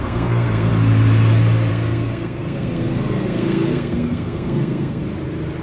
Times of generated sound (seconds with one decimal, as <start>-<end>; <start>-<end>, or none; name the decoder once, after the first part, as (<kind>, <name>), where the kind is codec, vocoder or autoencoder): 0.0-0.7 (codec, SNAC); 1.7-5.0

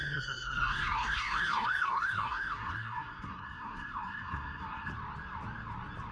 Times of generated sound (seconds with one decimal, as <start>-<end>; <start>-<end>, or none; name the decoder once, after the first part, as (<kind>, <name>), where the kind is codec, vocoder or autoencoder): 0.0-4.9 (codec, SNAC)

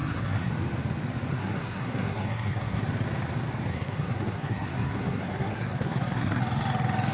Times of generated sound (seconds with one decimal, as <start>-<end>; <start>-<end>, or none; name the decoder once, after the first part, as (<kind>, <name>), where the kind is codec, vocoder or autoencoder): 0.0-0.5 (codec, SNAC); 1.3-2.8; 3.7-6.4

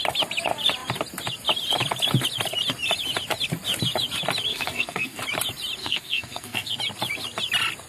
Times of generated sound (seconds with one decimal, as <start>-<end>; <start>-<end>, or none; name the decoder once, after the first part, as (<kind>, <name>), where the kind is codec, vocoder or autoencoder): 4.5-5.2 (codec, SNAC); 5.8-6.8